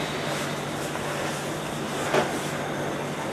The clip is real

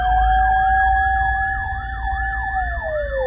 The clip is real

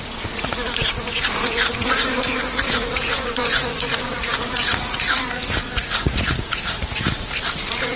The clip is fake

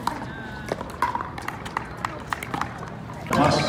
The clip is real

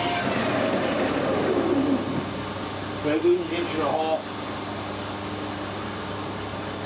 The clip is real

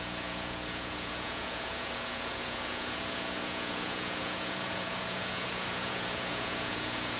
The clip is fake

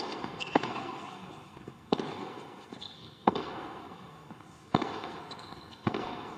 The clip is fake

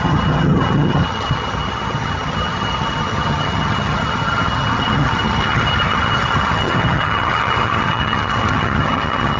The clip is fake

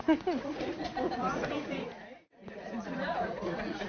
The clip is fake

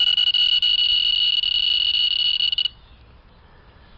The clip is real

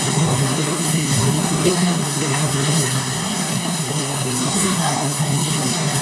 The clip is fake